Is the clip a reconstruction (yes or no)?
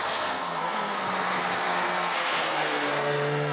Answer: yes